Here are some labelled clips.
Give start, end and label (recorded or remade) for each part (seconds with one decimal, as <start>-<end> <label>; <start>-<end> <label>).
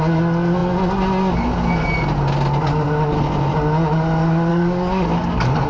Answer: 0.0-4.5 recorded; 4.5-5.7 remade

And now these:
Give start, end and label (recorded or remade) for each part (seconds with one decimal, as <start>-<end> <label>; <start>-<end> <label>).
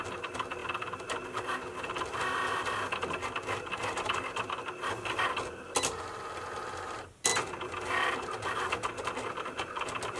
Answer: 0.0-10.2 recorded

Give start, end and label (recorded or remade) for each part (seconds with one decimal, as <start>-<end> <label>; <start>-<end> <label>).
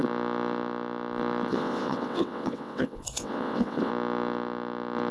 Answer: 0.0-1.5 recorded; 1.5-3.9 remade; 3.9-5.1 recorded